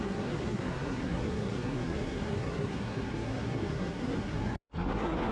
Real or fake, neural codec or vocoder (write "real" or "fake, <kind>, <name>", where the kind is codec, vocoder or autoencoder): fake, codec, SNAC